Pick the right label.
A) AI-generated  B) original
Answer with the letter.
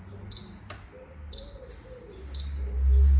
B